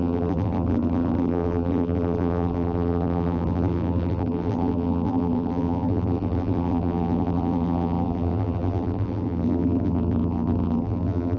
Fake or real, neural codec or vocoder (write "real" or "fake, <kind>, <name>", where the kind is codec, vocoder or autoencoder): fake, vocoder, BigVGAN v2